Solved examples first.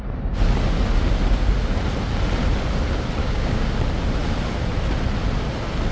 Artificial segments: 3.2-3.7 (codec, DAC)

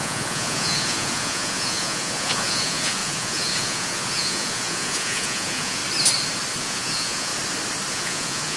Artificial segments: 0.0-5.8 (vocoder, Vocos); 6.6-7.3; 7.9-8.6